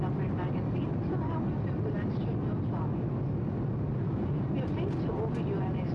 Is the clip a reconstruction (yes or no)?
no